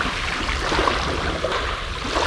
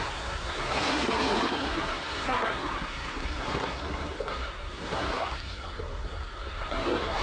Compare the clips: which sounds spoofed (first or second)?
second